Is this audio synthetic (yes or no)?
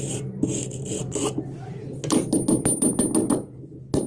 no